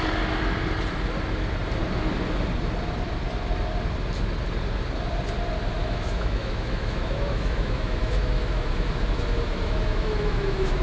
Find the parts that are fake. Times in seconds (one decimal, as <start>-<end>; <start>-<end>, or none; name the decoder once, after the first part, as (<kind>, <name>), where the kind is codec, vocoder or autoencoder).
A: 5.8-10.8 (autoencoder, DAC-VAE)